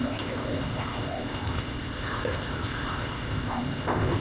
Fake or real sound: fake